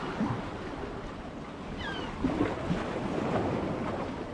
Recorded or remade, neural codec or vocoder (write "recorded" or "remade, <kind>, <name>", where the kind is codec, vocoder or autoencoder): recorded